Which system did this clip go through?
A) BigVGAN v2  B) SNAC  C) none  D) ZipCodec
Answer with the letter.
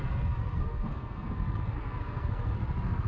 B